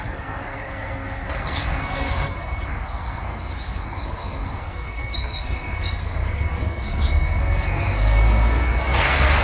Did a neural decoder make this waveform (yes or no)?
yes